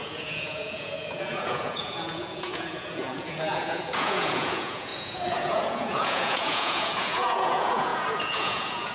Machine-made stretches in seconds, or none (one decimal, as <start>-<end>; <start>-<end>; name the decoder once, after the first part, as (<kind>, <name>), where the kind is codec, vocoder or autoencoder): 0.0-8.9 (vocoder, Vocos)